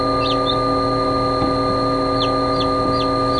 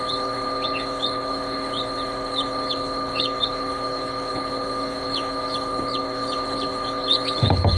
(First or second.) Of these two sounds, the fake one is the second